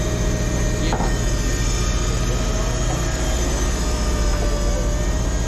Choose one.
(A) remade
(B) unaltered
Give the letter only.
B